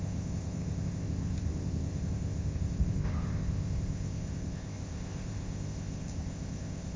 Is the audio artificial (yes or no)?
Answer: yes